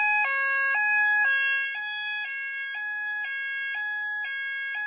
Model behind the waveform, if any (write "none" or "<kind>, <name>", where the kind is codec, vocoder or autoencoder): none